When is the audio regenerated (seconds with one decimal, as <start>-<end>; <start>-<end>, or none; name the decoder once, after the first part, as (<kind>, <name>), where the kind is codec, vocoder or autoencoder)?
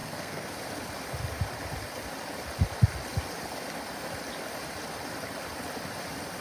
0.0-0.5 (codec, SNAC)